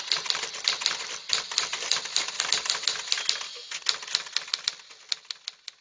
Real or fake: real